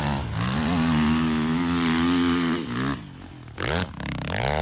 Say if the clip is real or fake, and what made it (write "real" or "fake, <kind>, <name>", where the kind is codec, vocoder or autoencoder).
real